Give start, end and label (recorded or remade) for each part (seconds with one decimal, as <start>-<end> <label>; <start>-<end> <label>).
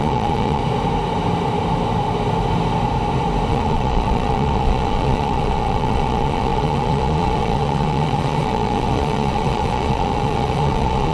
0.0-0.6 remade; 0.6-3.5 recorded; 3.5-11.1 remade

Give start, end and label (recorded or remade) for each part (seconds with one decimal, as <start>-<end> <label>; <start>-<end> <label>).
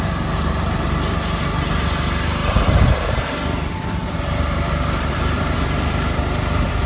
0.0-2.4 recorded; 2.4-6.5 remade; 6.5-6.9 recorded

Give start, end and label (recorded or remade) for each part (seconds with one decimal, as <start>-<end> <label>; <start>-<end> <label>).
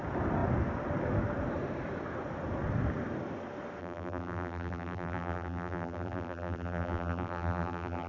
0.0-3.8 recorded; 3.8-8.1 remade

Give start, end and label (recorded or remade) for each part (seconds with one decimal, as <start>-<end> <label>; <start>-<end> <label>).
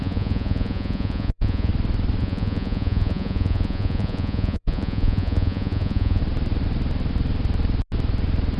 0.0-1.7 remade; 1.7-2.2 recorded; 2.2-6.2 remade; 6.2-8.6 recorded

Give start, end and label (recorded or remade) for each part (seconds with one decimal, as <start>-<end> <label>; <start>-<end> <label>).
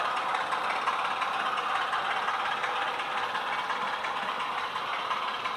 0.0-2.6 recorded; 2.6-5.6 remade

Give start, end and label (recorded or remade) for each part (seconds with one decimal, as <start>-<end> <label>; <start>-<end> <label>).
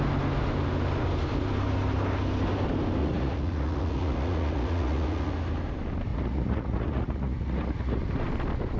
0.0-3.0 recorded; 3.0-5.3 remade; 5.3-6.1 recorded; 6.1-8.0 remade; 8.0-8.8 recorded